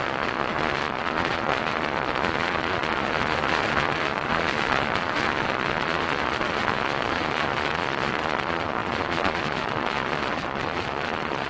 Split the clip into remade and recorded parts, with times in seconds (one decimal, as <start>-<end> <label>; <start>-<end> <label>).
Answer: 0.0-11.5 remade